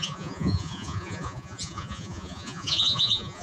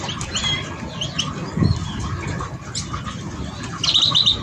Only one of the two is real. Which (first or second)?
second